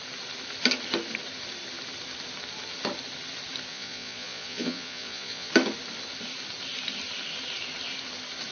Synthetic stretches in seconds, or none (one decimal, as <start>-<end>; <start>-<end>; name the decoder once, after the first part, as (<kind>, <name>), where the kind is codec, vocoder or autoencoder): 3.7-5.5 (vocoder, Vocos)